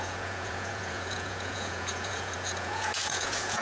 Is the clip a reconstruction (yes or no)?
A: yes